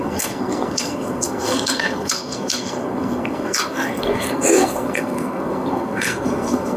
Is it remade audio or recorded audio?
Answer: remade